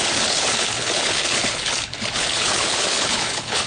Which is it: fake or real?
fake